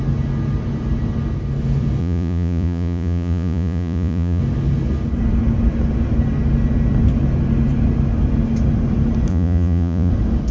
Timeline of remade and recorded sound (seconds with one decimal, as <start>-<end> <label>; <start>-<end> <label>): 0.0-2.0 recorded; 2.0-4.4 remade; 4.4-9.3 recorded; 9.3-10.1 remade; 10.1-10.5 recorded